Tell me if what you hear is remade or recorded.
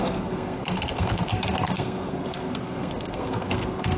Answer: remade